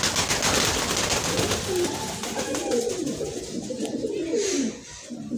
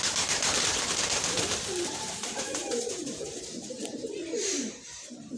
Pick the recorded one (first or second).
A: first